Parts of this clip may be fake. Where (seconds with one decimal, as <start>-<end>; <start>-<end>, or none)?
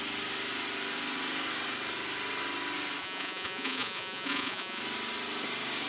3.0-4.8